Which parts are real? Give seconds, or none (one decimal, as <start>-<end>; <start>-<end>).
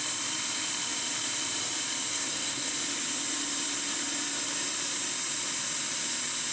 0.0-2.1; 2.7-6.5